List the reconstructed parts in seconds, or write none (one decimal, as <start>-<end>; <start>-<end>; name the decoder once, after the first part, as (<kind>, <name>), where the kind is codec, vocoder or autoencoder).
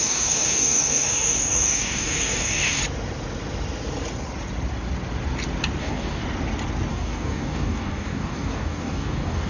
0.0-2.8 (codec, DAC); 5.8-6.2; 6.9-9.5